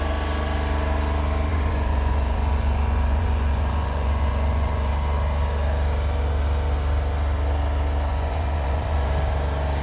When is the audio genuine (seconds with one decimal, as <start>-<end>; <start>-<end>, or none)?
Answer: 0.0-1.5; 4.9-8.1; 9.1-9.8